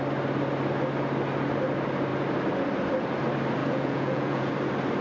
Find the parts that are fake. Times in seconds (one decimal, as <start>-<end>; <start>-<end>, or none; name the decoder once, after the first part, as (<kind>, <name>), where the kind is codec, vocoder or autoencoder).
3.6-4.5 (vocoder, Vocos)